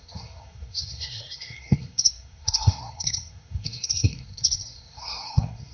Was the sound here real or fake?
fake